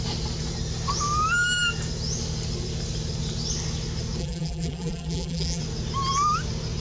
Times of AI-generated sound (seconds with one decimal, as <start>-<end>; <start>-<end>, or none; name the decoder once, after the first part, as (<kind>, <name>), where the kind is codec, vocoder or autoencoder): 4.2-5.6 (vocoder, BigVGAN v2)